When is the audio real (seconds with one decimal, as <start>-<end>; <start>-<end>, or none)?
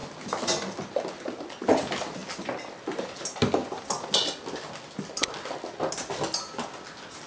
0.0-7.3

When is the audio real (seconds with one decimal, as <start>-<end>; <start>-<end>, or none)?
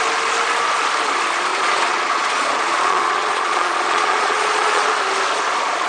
0.0-1.5; 5.0-5.9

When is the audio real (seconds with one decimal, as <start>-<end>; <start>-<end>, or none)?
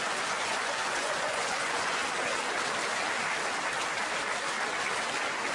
2.0-5.5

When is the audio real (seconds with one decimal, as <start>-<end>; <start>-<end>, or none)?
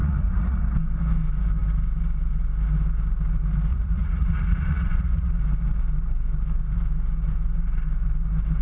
0.6-3.7; 5.3-8.6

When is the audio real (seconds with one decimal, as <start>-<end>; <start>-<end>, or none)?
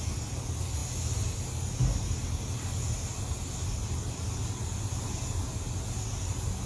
0.0-6.7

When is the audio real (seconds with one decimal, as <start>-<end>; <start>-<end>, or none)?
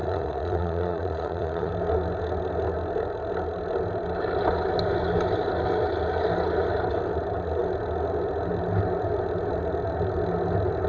1.7-10.9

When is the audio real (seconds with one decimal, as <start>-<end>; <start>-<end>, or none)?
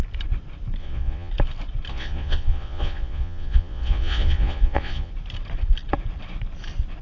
0.0-0.8; 1.3-1.9; 5.1-7.0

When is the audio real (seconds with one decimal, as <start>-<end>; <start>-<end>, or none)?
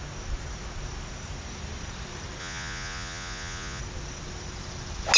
0.0-2.4; 3.8-5.2